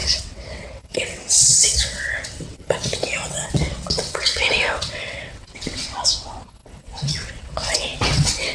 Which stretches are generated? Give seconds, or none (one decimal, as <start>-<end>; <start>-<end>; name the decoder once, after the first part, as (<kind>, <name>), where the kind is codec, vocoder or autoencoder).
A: 0.0-8.5 (vocoder, WaveNeXt)